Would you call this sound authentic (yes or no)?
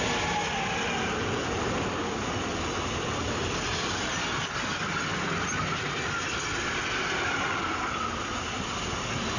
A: yes